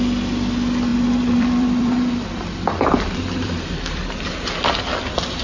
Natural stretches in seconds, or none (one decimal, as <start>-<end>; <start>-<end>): 0.0-0.9; 4.1-5.4